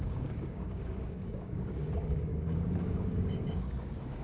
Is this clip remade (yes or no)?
yes